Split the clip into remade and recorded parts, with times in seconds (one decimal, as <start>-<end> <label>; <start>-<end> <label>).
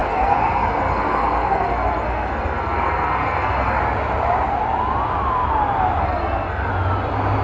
0.0-3.8 remade; 3.8-6.0 recorded; 6.0-6.7 remade; 6.7-7.4 recorded